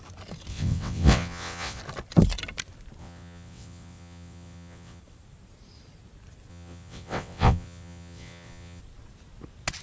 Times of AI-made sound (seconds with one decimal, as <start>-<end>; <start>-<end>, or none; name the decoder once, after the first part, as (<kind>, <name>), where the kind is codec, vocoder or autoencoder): 0.5-1.8 (vocoder, WaveNeXt); 3.0-5.0; 6.5-8.8